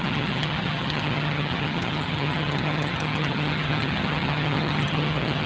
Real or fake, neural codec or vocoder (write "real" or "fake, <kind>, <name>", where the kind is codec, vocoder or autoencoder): fake, vocoder, HiFi-GAN